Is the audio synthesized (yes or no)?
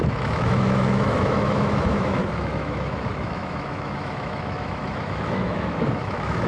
yes